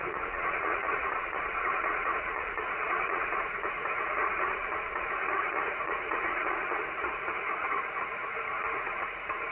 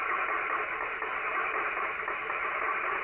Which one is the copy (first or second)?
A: first